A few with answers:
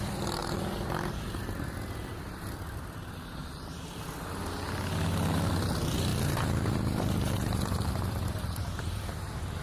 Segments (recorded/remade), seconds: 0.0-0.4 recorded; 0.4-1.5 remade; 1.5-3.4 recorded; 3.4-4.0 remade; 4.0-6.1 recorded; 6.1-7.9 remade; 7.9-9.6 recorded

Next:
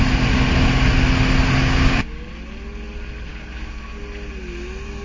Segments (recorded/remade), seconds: 0.0-1.6 recorded; 1.6-2.3 remade; 2.3-3.3 recorded; 3.3-4.0 remade; 4.0-5.0 recorded

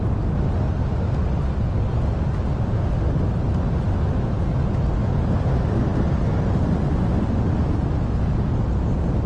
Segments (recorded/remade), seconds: 0.0-9.3 recorded